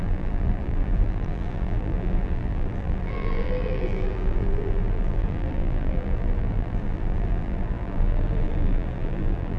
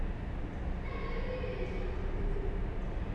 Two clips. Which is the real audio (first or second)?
second